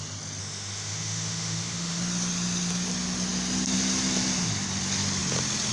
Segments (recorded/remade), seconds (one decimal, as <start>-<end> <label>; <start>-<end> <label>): 0.0-0.4 recorded; 0.4-2.0 remade; 2.0-5.7 recorded